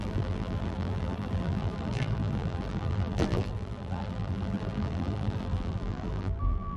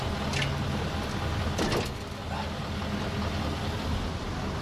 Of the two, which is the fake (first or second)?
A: first